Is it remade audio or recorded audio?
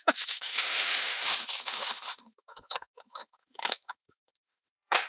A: remade